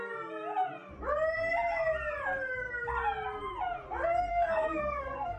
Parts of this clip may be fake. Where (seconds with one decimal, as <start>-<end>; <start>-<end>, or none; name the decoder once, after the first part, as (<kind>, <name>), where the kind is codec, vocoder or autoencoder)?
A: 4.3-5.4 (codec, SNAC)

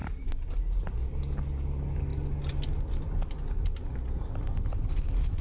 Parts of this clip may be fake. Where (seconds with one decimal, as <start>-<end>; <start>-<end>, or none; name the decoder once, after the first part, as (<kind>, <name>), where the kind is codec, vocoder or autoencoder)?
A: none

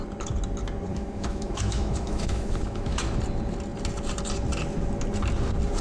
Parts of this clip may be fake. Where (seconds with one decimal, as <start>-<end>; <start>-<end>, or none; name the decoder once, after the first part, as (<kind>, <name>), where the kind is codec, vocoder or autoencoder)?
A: 0.9-3.2 (autoencoder, DAC-VAE)